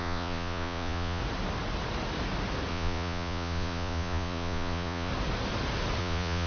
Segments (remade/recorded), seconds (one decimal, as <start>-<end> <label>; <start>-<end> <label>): 0.0-1.2 remade; 1.2-2.7 recorded; 2.7-5.1 remade; 5.1-6.0 recorded; 6.0-6.5 remade